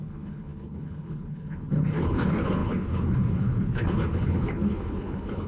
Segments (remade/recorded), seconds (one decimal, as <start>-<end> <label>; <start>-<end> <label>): 0.0-5.5 remade